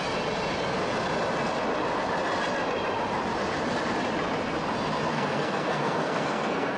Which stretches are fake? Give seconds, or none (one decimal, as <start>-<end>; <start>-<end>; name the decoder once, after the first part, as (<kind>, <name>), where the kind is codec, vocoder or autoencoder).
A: 5.1-6.8 (codec, SNAC)